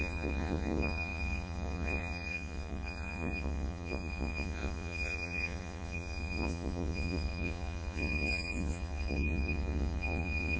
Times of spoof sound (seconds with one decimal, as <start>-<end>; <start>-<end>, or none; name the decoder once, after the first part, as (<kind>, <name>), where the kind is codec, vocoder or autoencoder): 0.0-10.6 (vocoder, Vocos)